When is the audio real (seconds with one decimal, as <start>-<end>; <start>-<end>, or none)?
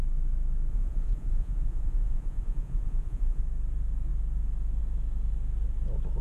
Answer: 0.0-0.7; 3.4-6.2